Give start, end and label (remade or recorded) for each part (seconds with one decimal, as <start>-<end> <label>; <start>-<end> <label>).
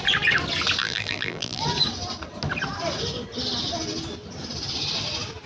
0.0-0.8 recorded; 0.8-1.6 remade; 1.6-5.5 recorded